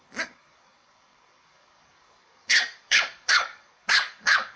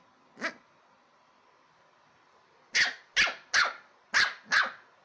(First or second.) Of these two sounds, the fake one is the first